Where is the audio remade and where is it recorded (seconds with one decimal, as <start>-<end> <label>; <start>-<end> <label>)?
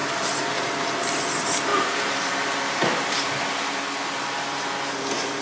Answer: 0.0-0.7 remade; 0.7-1.7 recorded; 1.7-3.4 remade; 3.4-5.4 recorded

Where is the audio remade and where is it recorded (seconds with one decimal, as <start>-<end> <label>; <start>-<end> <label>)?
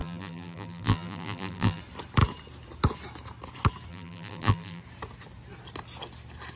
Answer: 0.0-1.8 remade; 1.8-3.9 recorded; 3.9-4.8 remade; 4.8-6.6 recorded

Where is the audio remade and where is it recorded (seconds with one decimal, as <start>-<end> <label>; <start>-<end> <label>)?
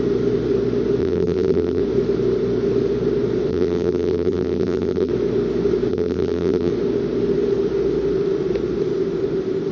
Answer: 0.0-1.0 recorded; 1.0-1.8 remade; 1.8-3.5 recorded; 3.5-5.1 remade; 5.1-5.9 recorded; 5.9-6.7 remade; 6.7-9.7 recorded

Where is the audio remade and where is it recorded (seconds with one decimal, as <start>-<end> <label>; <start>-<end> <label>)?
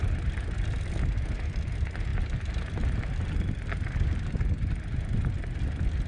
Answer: 0.0-0.9 remade; 0.9-6.1 recorded